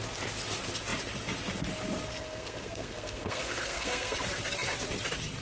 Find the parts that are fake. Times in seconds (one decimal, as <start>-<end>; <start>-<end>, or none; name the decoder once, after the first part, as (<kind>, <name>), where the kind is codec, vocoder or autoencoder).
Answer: 2.1-4.2 (codec, SNAC)